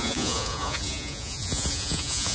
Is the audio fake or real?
fake